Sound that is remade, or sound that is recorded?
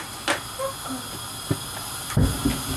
recorded